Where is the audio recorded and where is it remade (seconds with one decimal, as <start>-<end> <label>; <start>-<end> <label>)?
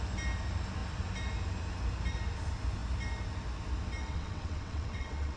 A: 0.0-4.0 recorded; 4.0-5.4 remade